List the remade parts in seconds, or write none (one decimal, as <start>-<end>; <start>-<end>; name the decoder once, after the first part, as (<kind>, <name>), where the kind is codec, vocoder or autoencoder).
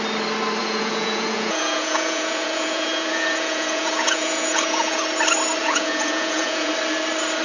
0.6-5.0 (vocoder, Vocos); 5.6-6.7